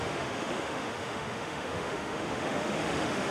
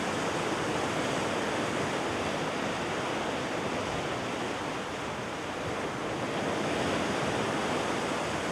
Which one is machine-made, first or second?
first